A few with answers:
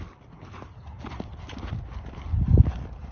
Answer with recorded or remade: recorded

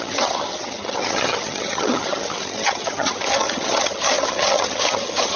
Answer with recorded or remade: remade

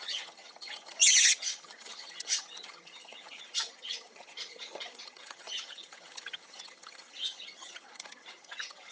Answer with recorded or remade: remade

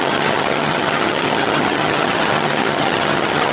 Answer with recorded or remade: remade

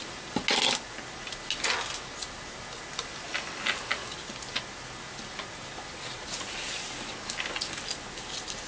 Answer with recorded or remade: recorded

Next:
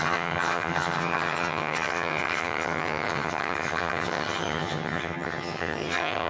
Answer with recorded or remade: remade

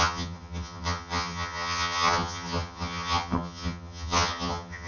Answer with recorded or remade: remade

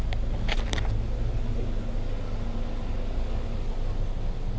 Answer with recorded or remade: recorded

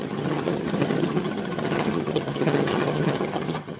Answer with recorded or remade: remade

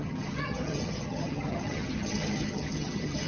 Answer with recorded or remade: remade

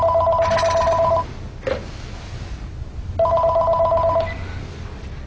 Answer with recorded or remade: recorded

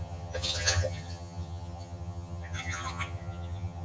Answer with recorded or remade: remade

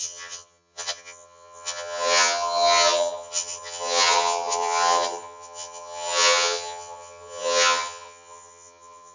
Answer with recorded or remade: remade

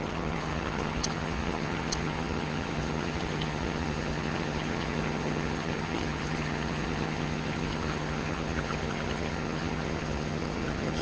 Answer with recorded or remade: remade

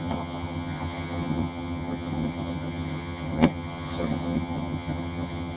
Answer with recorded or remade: remade